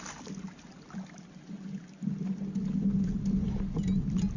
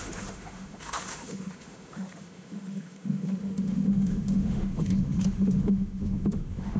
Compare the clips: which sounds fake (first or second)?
second